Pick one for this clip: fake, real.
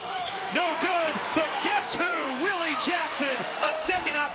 fake